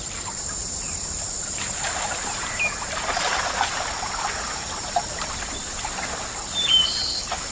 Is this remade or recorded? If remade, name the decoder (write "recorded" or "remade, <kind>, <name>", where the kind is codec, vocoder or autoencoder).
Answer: remade, vocoder, BigVGAN v2